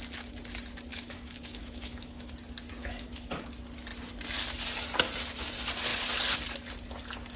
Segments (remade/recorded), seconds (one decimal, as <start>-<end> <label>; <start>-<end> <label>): 0.0-0.9 recorded; 0.9-2.3 remade; 2.3-2.8 recorded; 2.8-3.5 remade; 3.5-7.4 recorded